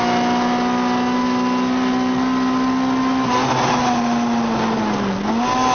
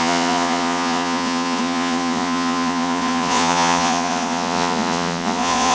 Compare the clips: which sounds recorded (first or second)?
first